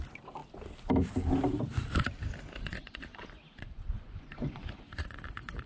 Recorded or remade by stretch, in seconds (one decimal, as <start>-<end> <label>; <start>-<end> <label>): 0.0-2.6 recorded; 2.6-5.7 remade